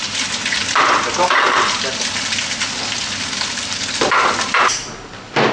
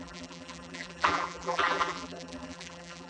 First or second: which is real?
first